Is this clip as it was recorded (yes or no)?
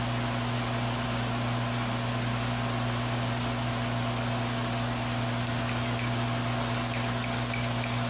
yes